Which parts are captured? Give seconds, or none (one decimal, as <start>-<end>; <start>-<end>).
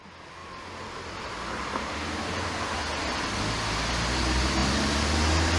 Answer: 0.0-5.6